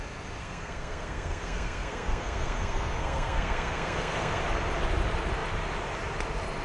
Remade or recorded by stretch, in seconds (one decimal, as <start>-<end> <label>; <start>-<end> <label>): 0.0-0.4 recorded; 0.4-4.4 remade; 4.4-6.6 recorded